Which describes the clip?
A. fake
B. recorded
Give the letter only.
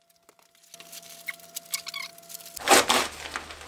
B